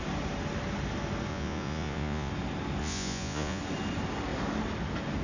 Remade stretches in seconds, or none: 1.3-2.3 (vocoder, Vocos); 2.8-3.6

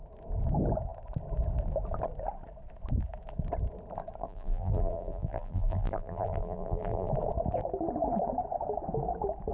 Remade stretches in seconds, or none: 4.2-7.1 (vocoder, BigVGAN v2)

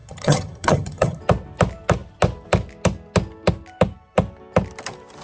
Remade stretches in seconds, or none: 0.0-1.2 (vocoder, HiFi-GAN)

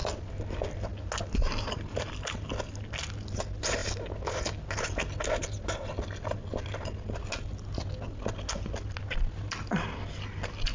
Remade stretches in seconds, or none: none

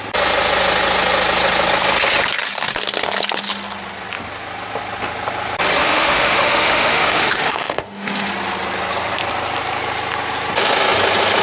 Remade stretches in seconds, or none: 5.8-8.3 (autoencoder, DAC-VAE)

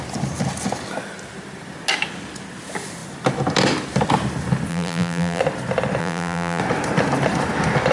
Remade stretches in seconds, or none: 4.7-5.4 (vocoder, BigVGAN v2); 6.0-6.6